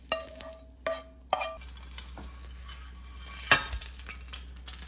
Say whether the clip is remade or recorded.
recorded